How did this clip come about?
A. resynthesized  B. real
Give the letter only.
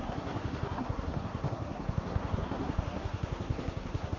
A